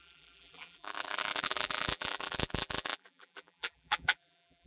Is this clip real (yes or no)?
no